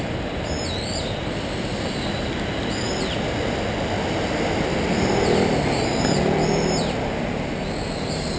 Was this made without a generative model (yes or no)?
yes